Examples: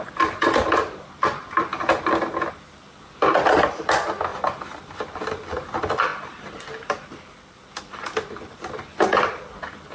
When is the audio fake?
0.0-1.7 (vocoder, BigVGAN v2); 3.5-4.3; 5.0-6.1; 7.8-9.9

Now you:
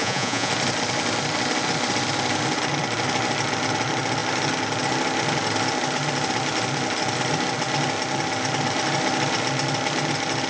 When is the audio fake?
0.0-0.5 (vocoder, Vocos)

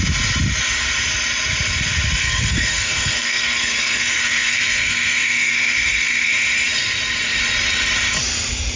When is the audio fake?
2.2-6.3 (codec, SNAC)

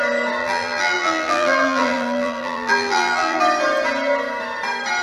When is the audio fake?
0.4-3.4 (vocoder, BigVGAN v2)

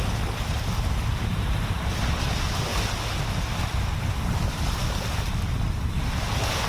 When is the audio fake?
1.3-1.9 (vocoder, BigVGAN v2)

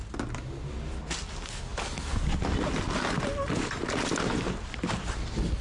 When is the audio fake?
none